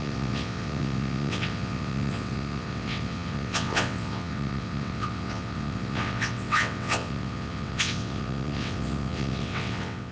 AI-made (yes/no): yes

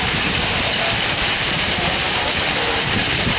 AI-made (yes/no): yes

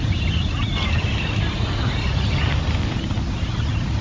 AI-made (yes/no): no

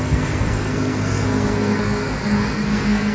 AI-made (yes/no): yes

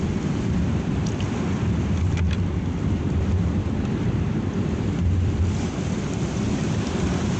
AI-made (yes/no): yes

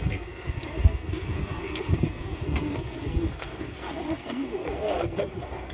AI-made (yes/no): yes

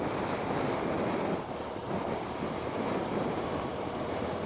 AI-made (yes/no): no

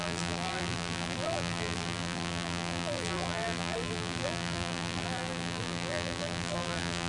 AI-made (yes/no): yes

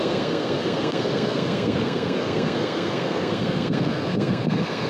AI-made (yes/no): yes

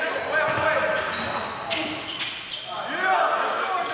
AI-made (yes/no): no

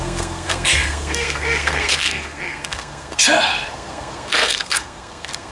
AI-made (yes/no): yes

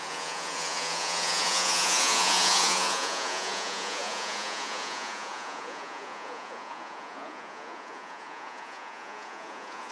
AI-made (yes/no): yes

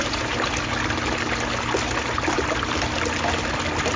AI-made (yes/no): no